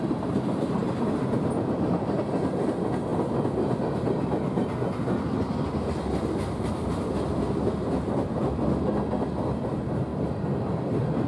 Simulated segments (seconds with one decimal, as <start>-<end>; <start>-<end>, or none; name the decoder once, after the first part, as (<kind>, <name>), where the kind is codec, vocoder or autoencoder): 3.1-3.8 (vocoder, BigVGAN v2); 10.1-10.6